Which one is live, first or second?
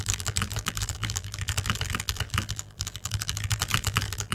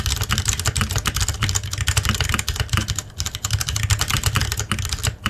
second